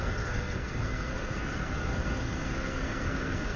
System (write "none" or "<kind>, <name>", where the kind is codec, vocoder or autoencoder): codec, SNAC